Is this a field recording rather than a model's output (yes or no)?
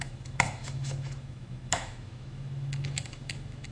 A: no